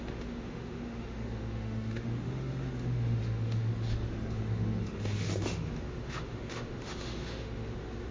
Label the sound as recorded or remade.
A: remade